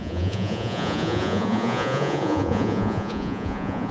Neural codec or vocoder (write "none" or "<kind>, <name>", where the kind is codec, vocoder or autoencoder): vocoder, Vocos